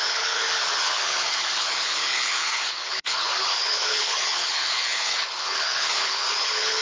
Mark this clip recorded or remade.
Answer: remade